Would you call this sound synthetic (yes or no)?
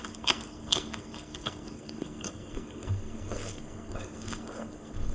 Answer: yes